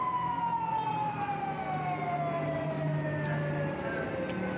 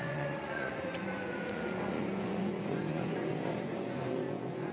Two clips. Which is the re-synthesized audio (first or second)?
second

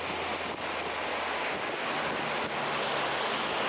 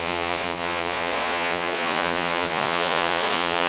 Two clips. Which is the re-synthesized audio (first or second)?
second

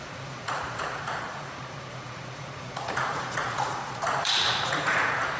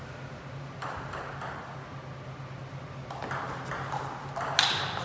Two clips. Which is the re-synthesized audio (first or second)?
first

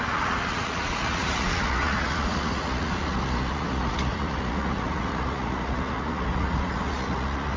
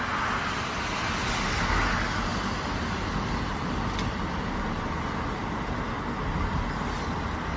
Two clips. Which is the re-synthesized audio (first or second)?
first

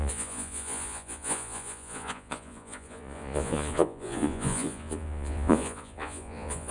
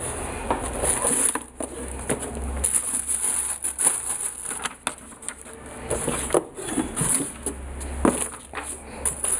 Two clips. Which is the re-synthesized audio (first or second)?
first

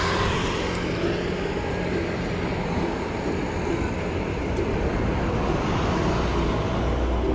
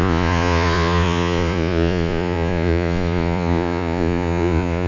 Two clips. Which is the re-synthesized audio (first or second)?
second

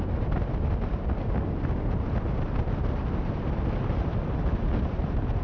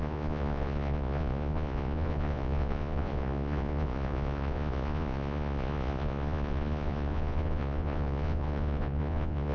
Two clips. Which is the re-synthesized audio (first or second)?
second